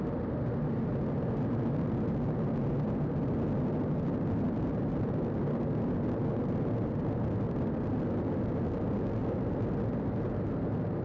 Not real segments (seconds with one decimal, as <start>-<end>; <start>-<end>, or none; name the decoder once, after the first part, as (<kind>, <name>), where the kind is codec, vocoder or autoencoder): none

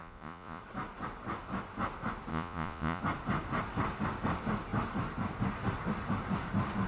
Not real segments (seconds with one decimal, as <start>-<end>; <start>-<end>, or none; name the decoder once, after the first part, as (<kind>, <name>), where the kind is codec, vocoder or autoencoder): 0.0-0.6 (vocoder, Vocos); 2.3-3.0

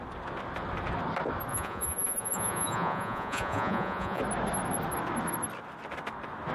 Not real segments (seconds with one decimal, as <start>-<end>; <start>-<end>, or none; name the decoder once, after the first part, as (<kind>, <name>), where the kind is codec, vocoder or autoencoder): 1.5-4.2 (vocoder, Vocos)

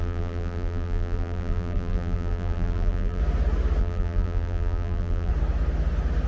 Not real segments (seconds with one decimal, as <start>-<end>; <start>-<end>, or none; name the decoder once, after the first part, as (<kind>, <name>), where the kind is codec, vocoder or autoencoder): 0.0-3.2 (vocoder, BigVGAN v2); 3.8-5.3